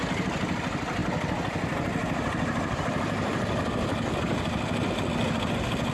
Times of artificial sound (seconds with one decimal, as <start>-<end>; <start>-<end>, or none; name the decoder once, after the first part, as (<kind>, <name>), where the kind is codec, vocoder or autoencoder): none